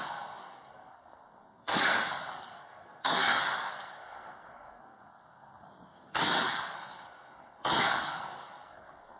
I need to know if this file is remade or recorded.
remade